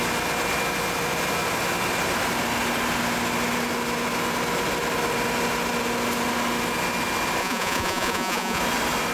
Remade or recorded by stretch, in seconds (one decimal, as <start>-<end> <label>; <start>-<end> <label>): 0.0-7.4 recorded; 7.4-8.6 remade; 8.6-9.1 recorded